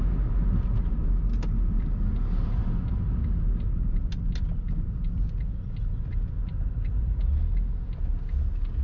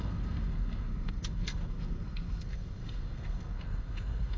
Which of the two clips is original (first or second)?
first